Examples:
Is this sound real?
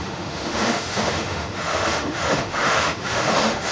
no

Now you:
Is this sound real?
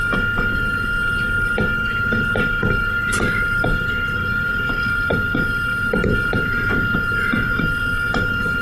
yes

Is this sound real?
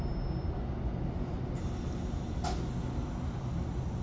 yes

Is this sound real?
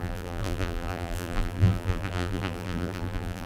no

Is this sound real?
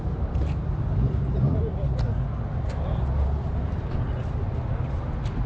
yes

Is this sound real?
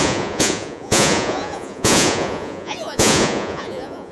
no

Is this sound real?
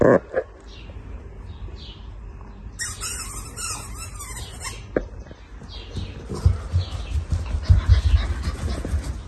yes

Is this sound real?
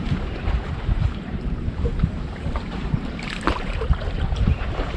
no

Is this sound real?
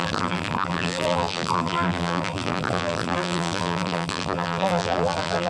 no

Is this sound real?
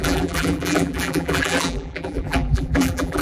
no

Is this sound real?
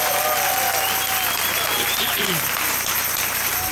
yes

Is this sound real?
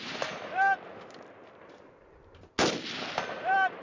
yes